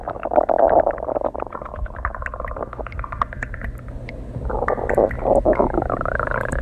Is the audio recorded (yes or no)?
yes